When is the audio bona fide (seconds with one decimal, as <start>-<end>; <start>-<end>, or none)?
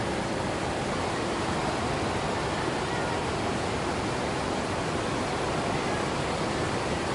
0.0-7.1